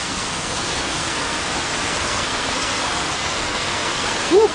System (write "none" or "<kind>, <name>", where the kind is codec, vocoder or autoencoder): codec, SNAC